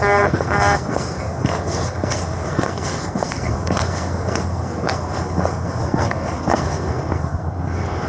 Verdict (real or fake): fake